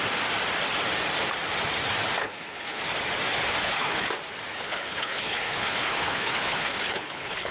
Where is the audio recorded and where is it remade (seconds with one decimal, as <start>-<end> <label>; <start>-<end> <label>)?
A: 0.0-2.2 recorded; 2.2-2.8 remade; 2.8-3.6 recorded; 3.6-4.1 remade; 4.1-4.5 recorded; 4.5-7.5 remade